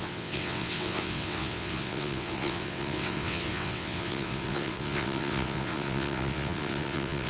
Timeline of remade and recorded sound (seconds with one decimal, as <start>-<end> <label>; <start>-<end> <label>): 0.0-7.3 remade